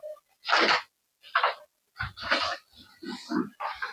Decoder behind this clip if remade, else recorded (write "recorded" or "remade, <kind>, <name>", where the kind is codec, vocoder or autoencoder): recorded